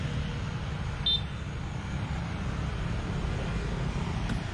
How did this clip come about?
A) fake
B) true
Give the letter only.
B